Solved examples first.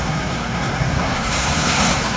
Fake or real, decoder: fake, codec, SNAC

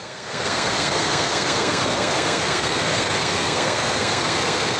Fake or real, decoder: fake, codec, SNAC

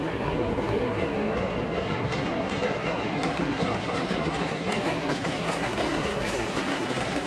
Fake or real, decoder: fake, codec, SNAC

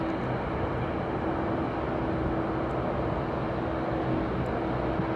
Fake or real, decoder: real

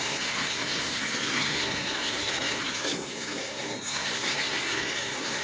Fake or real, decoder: fake, codec, SNAC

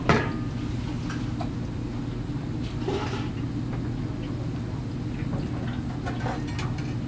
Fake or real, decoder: real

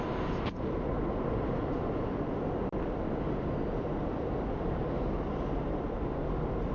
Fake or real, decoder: real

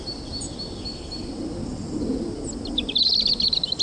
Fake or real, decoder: real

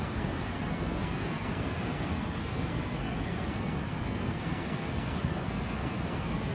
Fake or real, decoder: fake, codec, SNAC